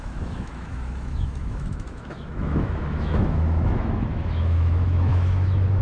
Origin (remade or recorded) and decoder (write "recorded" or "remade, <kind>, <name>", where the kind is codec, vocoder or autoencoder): remade, autoencoder, DAC-VAE